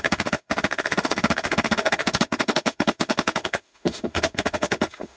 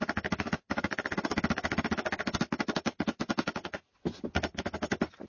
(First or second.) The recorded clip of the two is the second